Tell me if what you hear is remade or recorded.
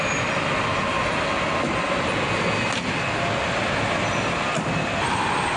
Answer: recorded